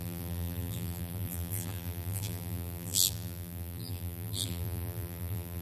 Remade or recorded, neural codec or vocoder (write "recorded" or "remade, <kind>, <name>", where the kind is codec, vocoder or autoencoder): remade, vocoder, BigVGAN v2